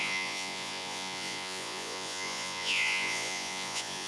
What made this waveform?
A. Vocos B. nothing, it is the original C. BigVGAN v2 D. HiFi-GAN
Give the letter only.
A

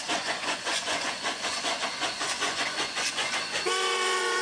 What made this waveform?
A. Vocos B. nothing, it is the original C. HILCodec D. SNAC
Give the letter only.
A